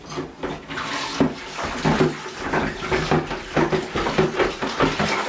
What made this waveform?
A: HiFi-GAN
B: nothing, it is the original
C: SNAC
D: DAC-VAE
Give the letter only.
B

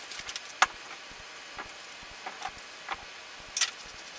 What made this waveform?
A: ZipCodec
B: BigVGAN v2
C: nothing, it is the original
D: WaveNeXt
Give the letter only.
C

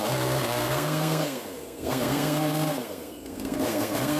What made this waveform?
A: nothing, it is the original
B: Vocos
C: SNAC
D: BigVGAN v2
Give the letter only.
C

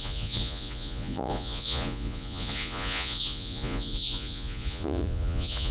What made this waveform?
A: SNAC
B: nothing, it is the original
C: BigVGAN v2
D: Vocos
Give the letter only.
D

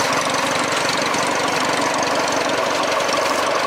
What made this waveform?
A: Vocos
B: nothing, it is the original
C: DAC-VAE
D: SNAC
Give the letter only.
B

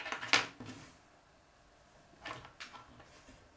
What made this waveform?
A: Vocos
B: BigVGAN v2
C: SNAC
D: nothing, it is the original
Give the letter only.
D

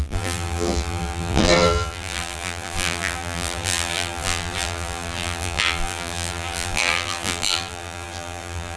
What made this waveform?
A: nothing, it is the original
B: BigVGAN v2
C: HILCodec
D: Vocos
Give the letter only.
B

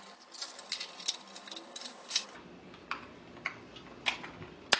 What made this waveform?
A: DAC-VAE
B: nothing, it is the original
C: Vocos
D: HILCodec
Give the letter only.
B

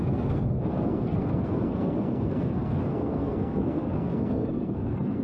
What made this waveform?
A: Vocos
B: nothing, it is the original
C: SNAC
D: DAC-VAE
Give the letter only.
C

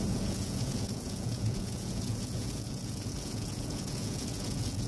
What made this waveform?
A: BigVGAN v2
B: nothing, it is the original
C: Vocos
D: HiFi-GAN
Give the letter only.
C